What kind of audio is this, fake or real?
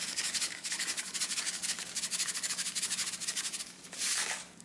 fake